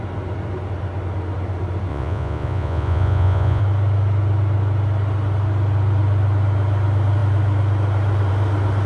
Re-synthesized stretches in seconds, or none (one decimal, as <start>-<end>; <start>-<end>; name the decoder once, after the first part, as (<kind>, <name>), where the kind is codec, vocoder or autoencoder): 1.9-3.6 (vocoder, Vocos)